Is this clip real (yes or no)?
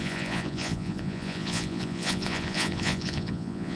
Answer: no